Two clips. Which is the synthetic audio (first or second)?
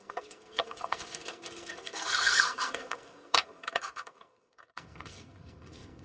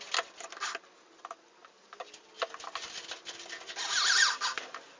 first